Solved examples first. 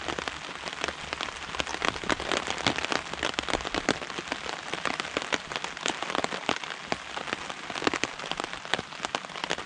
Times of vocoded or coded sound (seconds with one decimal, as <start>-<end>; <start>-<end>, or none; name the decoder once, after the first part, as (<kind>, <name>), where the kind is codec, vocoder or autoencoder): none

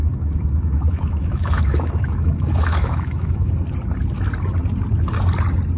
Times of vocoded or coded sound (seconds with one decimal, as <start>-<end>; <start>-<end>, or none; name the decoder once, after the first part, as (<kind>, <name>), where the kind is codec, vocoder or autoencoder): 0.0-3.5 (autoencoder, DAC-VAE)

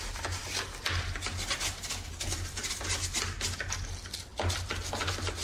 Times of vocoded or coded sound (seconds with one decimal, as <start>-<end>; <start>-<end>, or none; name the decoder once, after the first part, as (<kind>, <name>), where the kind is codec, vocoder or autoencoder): none